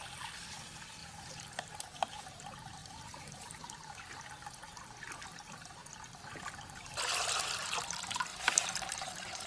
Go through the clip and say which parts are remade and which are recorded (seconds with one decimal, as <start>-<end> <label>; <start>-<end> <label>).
0.0-1.0 recorded; 1.0-2.2 remade; 2.2-2.8 recorded; 2.8-4.0 remade; 4.0-8.3 recorded; 8.3-9.5 remade